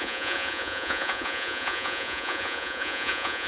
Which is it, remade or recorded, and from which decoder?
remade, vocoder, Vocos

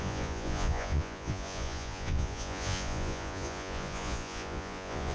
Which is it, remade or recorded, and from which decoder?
remade, vocoder, Vocos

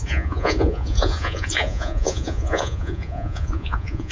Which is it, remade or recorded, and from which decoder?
remade, vocoder, Vocos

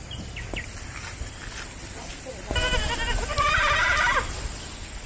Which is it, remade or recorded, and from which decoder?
recorded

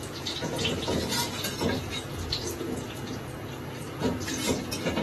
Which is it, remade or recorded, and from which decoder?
remade, vocoder, Vocos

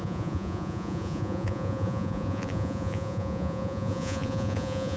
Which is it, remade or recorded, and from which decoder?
remade, vocoder, Vocos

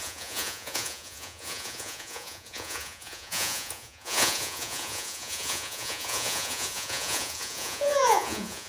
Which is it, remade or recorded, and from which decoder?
remade, vocoder, Vocos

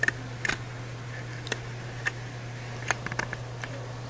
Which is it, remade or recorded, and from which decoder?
recorded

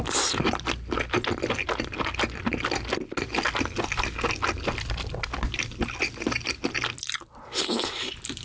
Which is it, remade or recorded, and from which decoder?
recorded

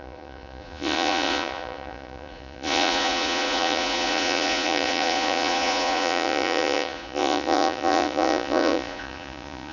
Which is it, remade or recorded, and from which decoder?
remade, vocoder, Vocos